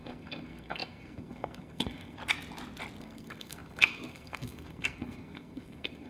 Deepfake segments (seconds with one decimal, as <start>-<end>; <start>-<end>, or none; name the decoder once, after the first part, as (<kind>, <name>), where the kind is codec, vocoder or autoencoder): 0.0-2.2 (codec, SNAC); 3.0-6.1